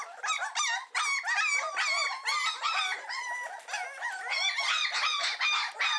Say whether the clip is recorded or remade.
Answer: recorded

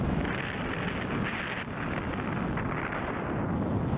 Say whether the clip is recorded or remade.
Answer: recorded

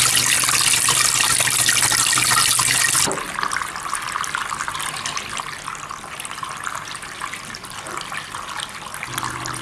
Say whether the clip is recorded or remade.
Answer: recorded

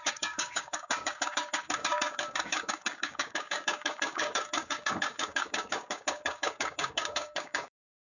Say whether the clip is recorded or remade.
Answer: remade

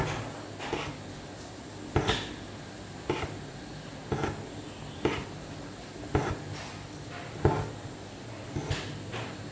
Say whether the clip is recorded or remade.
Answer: recorded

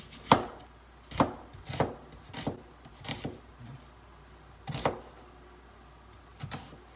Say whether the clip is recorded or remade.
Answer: recorded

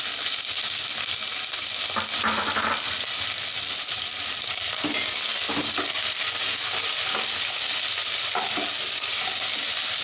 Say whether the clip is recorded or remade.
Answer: recorded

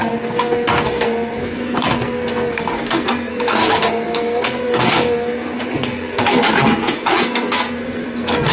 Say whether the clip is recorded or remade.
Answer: remade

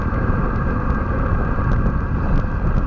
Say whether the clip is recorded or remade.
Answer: recorded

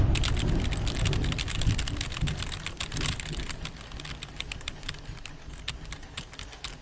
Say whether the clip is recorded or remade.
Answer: recorded